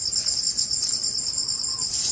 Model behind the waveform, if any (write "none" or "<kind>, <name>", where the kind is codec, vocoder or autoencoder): none